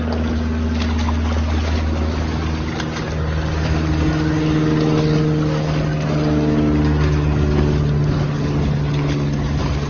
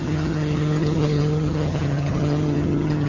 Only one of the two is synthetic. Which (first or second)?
second